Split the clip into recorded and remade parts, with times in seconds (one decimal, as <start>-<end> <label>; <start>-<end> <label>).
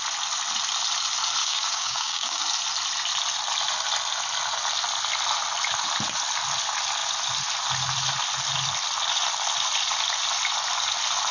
0.0-1.4 recorded; 1.4-2.4 remade; 2.4-11.3 recorded